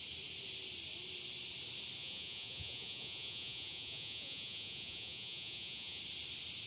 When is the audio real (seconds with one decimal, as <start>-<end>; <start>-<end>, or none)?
0.0-2.0; 6.0-6.7